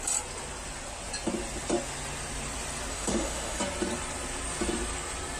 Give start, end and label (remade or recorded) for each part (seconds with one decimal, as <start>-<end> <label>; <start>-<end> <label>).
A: 0.0-2.9 recorded; 2.9-3.6 remade; 3.6-5.4 recorded